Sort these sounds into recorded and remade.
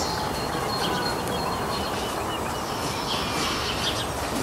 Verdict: recorded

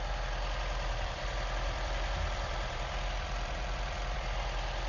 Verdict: remade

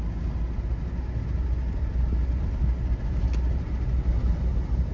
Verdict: recorded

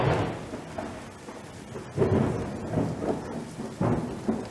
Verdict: recorded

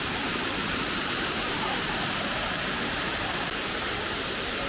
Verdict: remade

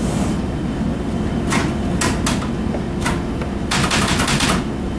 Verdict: recorded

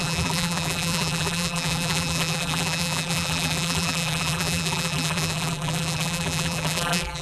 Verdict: remade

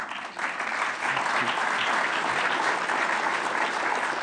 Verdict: recorded